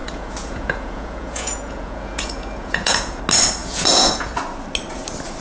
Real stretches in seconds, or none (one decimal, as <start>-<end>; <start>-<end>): 3.2-3.6; 4.4-5.4

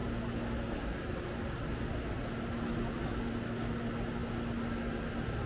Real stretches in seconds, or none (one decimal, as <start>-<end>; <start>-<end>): 0.0-5.5

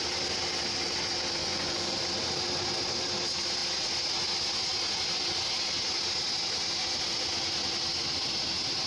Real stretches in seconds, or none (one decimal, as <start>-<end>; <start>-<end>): 0.0-1.4; 2.0-8.9